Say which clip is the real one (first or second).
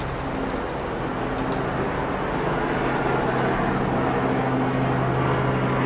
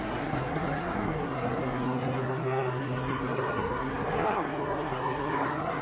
first